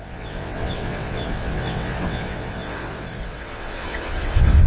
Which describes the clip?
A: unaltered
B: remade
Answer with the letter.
B